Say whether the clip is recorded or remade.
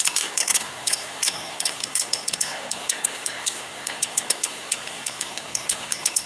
remade